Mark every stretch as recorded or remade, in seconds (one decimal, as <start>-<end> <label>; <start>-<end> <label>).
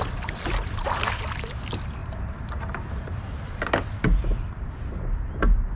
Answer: 0.0-2.0 recorded; 2.0-3.7 remade; 3.7-5.8 recorded